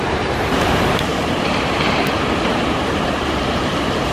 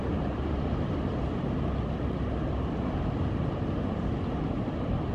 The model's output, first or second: first